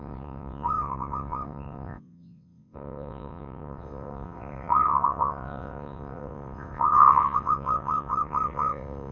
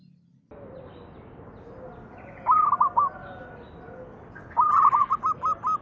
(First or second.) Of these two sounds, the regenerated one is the first